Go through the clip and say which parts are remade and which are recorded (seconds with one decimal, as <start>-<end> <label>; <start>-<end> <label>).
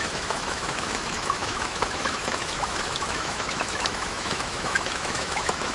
0.0-5.7 remade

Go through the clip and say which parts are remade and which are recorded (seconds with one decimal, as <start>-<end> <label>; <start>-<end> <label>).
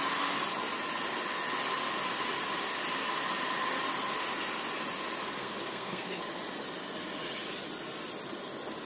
0.0-5.4 recorded; 5.4-6.2 remade; 6.2-8.9 recorded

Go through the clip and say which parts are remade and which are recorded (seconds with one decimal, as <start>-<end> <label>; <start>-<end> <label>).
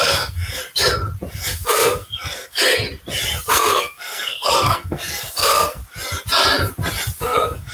0.0-0.6 remade; 0.6-1.3 recorded; 1.3-2.6 remade; 2.6-3.5 recorded; 3.5-5.8 remade; 5.8-7.2 recorded; 7.2-7.7 remade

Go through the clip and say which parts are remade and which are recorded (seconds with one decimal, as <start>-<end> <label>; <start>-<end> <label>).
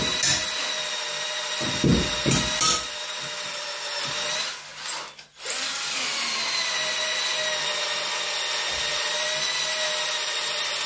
0.0-10.9 recorded